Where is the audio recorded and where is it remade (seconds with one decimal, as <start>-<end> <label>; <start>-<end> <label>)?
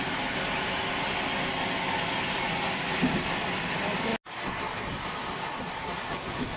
0.0-6.6 recorded